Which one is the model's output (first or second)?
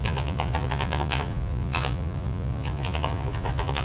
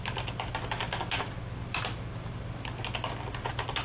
first